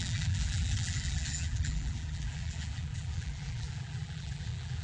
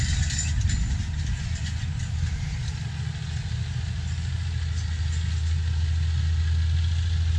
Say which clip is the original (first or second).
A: second